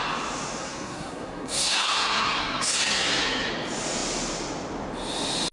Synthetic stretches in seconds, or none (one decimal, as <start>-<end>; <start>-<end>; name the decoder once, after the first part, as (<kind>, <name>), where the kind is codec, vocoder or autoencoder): 0.6-3.5 (codec, SNAC)